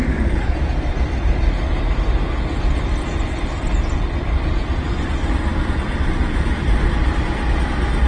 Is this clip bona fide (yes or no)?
no